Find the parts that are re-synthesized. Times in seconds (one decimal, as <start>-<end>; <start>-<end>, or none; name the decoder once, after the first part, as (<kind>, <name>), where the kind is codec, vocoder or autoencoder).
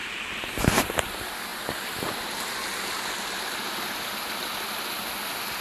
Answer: none